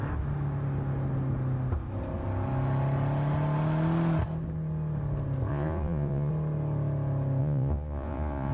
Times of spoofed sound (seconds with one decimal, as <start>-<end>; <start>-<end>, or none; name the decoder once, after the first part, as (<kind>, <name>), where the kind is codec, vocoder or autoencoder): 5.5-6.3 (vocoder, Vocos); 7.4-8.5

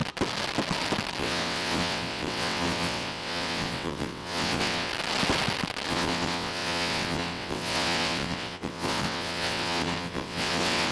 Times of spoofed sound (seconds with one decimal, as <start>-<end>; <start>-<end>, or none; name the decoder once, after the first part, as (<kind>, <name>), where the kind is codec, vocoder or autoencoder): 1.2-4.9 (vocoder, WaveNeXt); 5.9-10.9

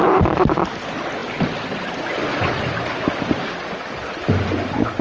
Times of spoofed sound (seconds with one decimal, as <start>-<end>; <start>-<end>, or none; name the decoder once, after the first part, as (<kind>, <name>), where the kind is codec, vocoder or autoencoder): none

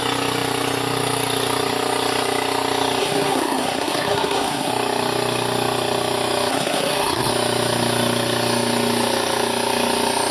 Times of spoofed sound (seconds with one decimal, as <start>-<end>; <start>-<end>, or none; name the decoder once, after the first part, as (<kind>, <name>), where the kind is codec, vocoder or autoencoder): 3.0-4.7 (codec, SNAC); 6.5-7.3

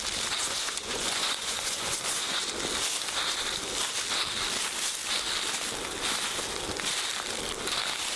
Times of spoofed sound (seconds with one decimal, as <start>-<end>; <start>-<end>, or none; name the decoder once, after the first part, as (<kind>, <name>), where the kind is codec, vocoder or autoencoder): 0.4-2.4 (vocoder, Vocos)

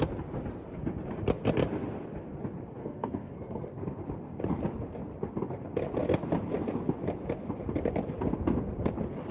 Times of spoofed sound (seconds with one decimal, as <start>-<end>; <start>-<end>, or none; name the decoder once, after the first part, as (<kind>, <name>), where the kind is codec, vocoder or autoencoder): 2.8-4.0 (codec, SNAC)

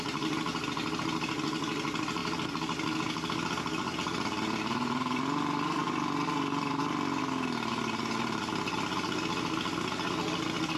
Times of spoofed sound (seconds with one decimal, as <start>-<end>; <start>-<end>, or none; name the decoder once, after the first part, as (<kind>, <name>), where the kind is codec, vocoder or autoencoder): none